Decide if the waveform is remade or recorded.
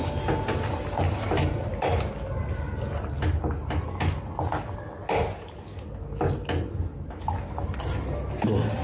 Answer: recorded